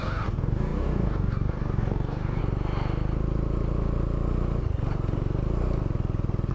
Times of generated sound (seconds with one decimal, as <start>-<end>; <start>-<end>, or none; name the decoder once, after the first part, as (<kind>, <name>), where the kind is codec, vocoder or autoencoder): 0.0-2.4 (codec, DAC)